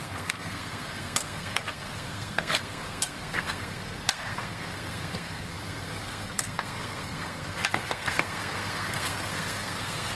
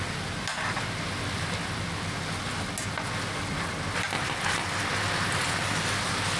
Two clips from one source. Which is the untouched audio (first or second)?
second